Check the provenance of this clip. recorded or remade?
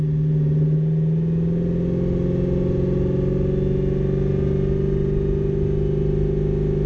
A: recorded